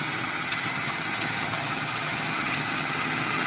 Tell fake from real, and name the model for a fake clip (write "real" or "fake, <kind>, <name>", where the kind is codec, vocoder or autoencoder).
fake, vocoder, HiFi-GAN